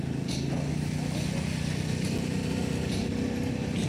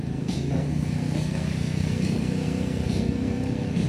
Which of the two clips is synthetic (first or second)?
second